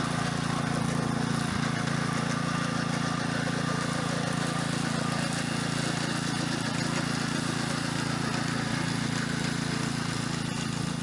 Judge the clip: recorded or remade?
recorded